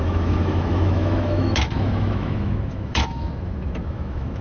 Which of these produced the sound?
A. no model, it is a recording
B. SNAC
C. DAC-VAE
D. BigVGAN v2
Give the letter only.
C